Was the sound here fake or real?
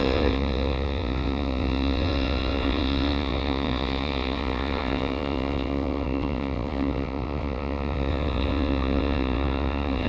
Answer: fake